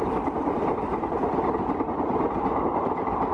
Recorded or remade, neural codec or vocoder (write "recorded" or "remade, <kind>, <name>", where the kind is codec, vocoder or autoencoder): recorded